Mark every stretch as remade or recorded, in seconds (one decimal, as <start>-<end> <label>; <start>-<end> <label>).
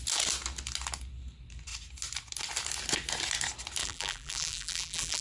0.0-3.8 recorded; 3.8-5.2 remade